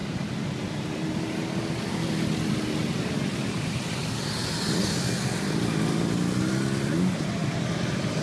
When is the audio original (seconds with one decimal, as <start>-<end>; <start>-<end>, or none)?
0.0-8.2